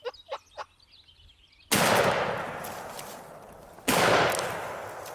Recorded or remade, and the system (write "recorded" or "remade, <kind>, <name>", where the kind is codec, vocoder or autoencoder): recorded